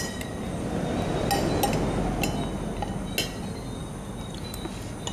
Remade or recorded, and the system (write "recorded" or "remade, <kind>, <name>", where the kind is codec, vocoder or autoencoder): recorded